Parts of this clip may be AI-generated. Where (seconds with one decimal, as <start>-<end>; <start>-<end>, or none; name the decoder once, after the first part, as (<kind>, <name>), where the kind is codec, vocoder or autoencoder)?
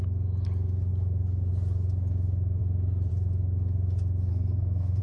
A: 4.3-5.0 (codec, SNAC)